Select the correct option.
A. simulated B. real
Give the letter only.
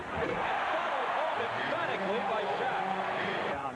A